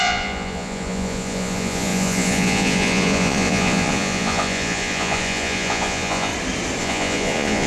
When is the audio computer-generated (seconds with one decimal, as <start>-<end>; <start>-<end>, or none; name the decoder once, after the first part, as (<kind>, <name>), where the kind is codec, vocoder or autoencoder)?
0.0-6.3 (vocoder, Vocos); 6.8-7.7